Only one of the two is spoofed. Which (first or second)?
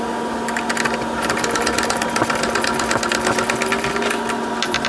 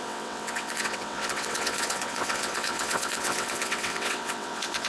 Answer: second